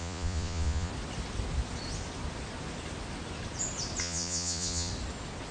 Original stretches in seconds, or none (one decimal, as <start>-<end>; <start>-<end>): 0.9-4.0; 4.9-5.5